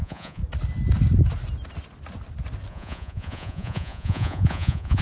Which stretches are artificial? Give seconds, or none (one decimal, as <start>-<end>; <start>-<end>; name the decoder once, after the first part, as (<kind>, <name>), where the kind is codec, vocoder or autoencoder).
0.0-0.4 (vocoder, Vocos); 2.7-5.0